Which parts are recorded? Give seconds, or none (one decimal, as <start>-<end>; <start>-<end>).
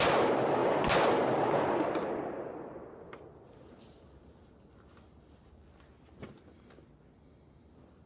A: 0.0-8.1